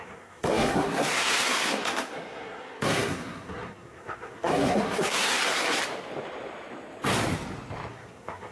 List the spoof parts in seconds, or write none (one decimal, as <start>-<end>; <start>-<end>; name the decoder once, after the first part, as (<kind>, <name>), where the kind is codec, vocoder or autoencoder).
0.0-5.8 (codec, SNAC); 7.9-8.5